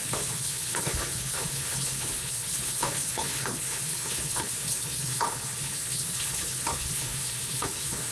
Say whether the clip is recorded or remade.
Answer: remade